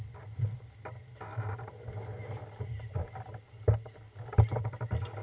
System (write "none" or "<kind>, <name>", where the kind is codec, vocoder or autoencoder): none